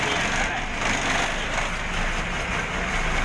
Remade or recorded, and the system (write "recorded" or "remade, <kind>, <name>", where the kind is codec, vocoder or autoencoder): recorded